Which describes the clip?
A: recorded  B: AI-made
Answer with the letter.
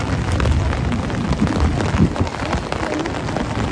A